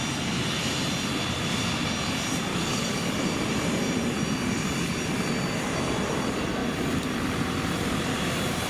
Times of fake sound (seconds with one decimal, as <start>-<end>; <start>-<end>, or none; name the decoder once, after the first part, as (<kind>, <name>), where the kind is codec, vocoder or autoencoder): 2.5-3.2 (codec, DAC)